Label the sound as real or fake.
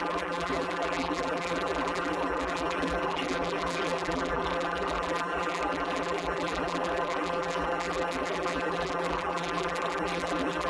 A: fake